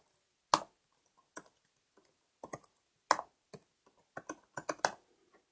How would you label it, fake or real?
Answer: real